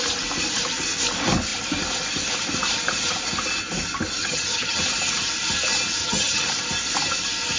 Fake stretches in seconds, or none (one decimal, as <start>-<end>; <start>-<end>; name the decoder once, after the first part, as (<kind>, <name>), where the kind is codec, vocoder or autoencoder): 4.2-4.8 (vocoder, HiFi-GAN); 6.0-6.5